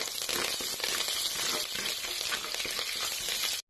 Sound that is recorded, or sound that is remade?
recorded